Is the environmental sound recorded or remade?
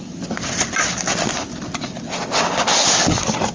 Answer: recorded